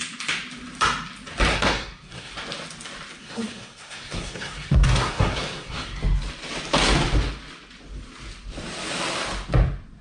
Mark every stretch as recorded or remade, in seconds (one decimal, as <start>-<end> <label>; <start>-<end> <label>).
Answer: 0.0-1.5 recorded; 1.5-2.3 remade; 2.3-3.2 recorded; 3.2-6.0 remade; 6.0-10.0 recorded